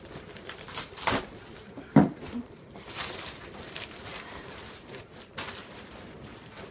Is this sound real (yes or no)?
no